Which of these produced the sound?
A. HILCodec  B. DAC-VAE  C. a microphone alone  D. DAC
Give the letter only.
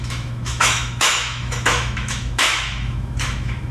B